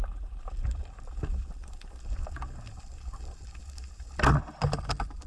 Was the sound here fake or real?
real